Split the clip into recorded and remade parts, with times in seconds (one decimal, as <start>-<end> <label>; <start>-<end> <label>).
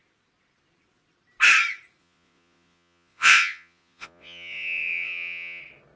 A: 0.0-2.0 recorded; 2.0-5.6 remade; 5.6-6.0 recorded